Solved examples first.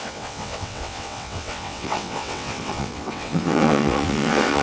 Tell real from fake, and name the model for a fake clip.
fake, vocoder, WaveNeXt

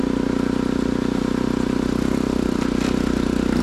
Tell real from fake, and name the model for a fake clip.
real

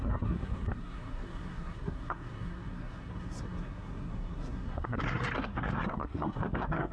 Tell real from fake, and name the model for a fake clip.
fake, codec, SNAC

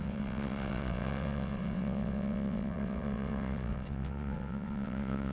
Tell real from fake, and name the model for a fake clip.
fake, vocoder, WaveNeXt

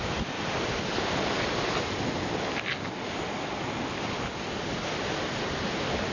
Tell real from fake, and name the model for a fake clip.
real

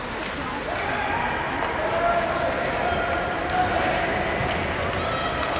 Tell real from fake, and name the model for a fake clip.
real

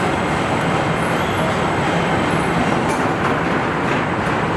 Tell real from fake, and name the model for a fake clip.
real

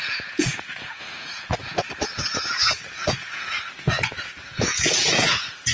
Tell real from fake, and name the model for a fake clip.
fake, vocoder, Vocos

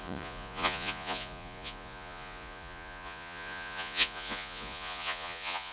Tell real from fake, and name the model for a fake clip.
fake, vocoder, Vocos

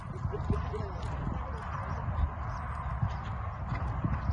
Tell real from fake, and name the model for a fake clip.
real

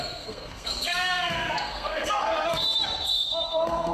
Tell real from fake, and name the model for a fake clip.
fake, codec, SNAC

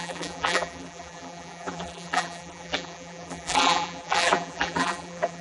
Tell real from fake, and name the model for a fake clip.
fake, vocoder, BigVGAN v2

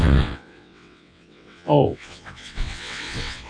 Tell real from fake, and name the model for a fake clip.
fake, vocoder, WaveNeXt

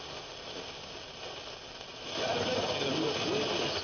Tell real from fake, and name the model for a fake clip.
real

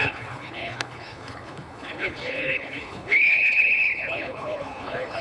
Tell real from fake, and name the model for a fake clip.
fake, codec, HILCodec